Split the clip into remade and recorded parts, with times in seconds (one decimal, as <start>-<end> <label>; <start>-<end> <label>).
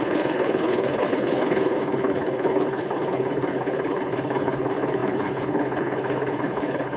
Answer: 0.0-7.0 remade